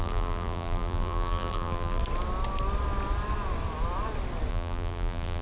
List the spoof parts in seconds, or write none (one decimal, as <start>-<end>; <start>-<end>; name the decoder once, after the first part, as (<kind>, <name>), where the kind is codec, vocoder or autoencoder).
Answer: 0.0-2.0 (vocoder, BigVGAN v2); 4.5-5.4